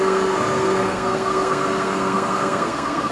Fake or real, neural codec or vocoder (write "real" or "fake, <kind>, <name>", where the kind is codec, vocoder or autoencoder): fake, codec, SNAC